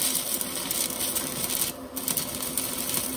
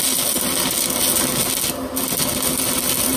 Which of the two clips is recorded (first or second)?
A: second